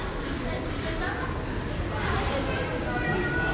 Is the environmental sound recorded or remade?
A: recorded